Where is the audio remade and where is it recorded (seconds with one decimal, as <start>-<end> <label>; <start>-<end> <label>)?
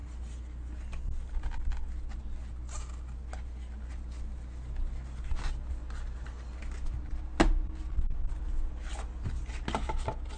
0.0-10.4 recorded